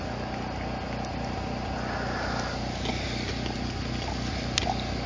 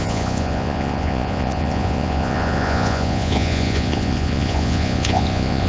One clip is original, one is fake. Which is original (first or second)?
first